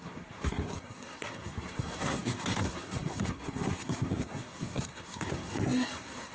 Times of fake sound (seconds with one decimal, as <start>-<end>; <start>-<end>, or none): 0.0-6.3